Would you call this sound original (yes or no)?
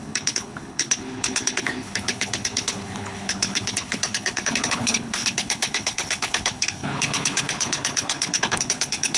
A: no